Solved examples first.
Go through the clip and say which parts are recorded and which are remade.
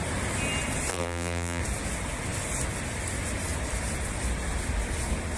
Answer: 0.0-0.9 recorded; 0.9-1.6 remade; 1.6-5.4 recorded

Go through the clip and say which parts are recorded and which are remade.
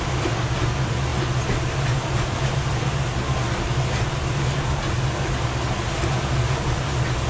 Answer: 0.0-7.3 recorded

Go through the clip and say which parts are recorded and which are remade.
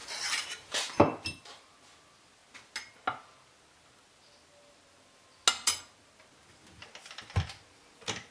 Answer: 0.0-1.0 remade; 1.0-8.3 recorded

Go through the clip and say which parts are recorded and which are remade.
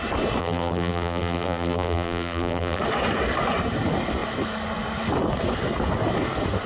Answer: 0.0-0.4 recorded; 0.4-2.8 remade; 2.8-6.7 recorded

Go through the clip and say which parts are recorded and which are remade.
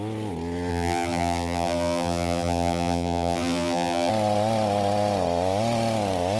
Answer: 0.0-0.7 recorded; 0.7-4.1 remade; 4.1-6.4 recorded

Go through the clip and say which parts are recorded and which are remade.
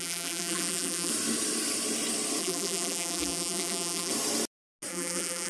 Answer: 0.0-1.1 remade; 1.1-2.4 recorded; 2.4-4.1 remade; 4.1-4.9 recorded; 4.9-5.5 remade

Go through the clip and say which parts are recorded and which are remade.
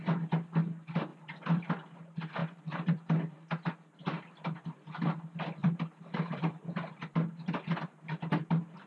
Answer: 0.0-1.1 recorded; 1.1-1.7 remade; 1.7-2.4 recorded; 2.4-3.3 remade; 3.3-5.6 recorded; 5.6-6.9 remade; 6.9-8.9 recorded